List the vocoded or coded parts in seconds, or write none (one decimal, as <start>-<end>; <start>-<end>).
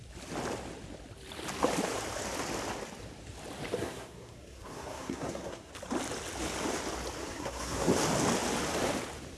3.8-5.7; 7.2-7.9